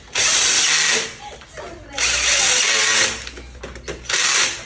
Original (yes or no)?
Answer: yes